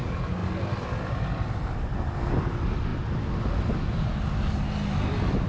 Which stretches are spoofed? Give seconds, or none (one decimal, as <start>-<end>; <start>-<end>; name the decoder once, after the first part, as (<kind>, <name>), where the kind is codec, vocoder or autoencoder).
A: none